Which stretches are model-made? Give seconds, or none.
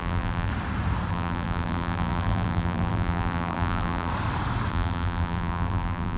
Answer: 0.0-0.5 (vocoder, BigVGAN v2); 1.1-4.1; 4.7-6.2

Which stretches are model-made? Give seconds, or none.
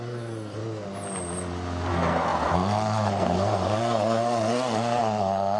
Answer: 0.0-0.6 (codec, SNAC); 1.9-5.6